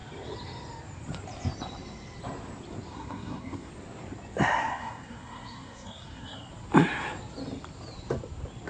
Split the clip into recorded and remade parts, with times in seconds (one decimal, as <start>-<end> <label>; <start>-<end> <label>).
0.0-2.9 recorded; 2.9-3.7 remade; 3.7-4.6 recorded; 4.6-6.5 remade; 6.5-8.7 recorded